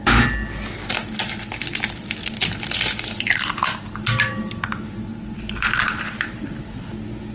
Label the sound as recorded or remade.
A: recorded